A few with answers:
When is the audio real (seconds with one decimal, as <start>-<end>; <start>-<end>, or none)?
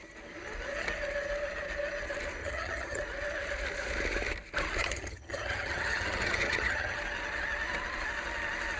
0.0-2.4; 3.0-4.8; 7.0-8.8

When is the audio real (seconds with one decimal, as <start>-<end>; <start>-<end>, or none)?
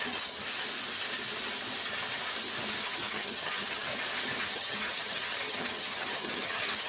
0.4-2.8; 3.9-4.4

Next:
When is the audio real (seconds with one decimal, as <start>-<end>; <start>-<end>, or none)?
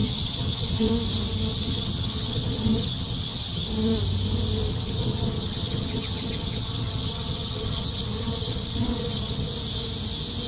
0.9-1.5; 3.7-4.7; 9.5-10.5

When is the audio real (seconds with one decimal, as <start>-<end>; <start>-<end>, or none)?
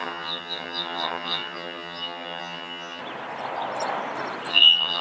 3.0-4.5